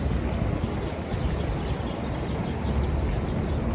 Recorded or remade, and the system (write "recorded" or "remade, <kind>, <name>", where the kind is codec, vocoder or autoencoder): recorded